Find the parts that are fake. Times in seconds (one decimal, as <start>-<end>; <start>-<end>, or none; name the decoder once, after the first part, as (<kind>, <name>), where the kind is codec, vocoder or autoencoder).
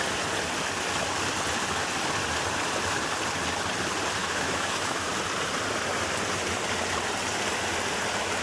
4.2-5.1 (autoencoder, DAC-VAE)